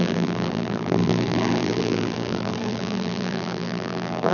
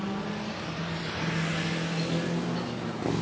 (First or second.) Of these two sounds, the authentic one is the second